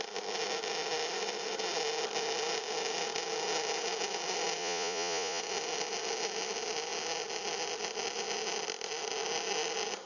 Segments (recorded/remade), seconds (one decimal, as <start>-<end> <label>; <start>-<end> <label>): 0.0-4.6 recorded; 4.6-5.4 remade; 5.4-10.1 recorded

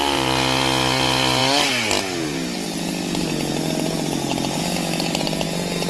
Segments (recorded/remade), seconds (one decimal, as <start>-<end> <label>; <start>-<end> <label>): 0.0-5.9 recorded

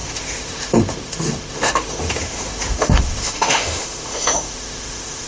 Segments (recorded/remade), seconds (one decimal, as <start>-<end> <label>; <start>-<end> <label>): 0.0-5.3 remade

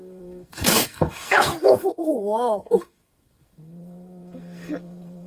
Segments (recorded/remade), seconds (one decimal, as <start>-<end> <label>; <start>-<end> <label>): 0.0-5.3 remade

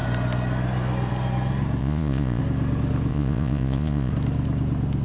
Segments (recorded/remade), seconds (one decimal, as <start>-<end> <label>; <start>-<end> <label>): 0.0-1.8 recorded; 1.8-2.4 remade; 2.4-3.1 recorded; 3.1-4.1 remade; 4.1-5.0 recorded

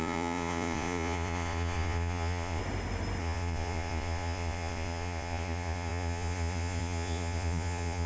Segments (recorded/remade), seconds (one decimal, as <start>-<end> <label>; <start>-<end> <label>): 0.0-2.6 remade; 2.6-3.2 recorded; 3.2-8.1 remade

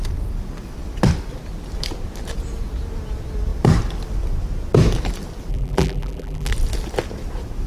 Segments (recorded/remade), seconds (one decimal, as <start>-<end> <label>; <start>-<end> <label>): 0.0-5.5 recorded; 5.5-6.5 remade; 6.5-7.7 recorded